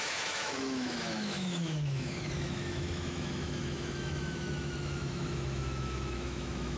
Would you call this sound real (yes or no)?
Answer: no